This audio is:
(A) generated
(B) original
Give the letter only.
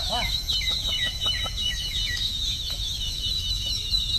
A